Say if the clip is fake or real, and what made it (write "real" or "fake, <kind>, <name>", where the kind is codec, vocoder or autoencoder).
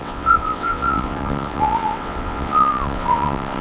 fake, vocoder, WaveNeXt